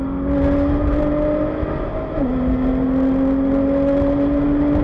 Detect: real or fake real